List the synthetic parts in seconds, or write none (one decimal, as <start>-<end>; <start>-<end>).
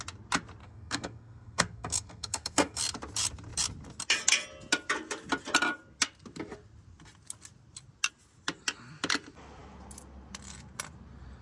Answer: 0.6-2.8